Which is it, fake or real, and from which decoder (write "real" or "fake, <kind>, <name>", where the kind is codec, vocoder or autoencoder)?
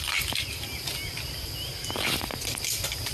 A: real